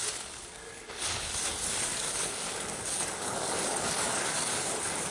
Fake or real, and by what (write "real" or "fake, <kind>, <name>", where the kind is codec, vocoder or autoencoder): fake, codec, DAC